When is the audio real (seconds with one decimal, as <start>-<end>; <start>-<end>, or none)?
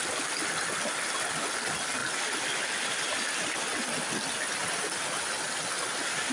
0.0-6.3